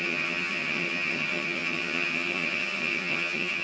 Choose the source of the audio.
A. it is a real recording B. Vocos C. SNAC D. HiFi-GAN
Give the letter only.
D